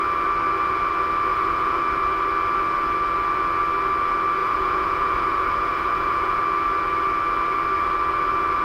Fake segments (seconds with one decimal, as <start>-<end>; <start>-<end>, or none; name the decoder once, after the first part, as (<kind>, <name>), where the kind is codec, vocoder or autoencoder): 1.3-1.8 (vocoder, Vocos); 4.4-6.4